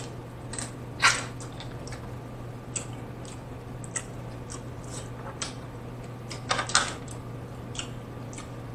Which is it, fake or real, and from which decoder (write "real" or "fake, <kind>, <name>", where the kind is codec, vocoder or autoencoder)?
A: real